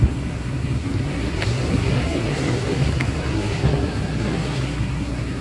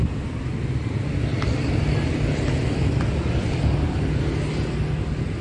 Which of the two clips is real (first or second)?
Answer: second